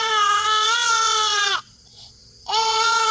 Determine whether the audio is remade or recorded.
remade